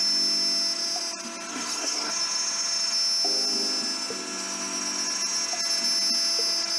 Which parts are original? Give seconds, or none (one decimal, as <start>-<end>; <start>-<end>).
0.0-1.5; 2.1-6.8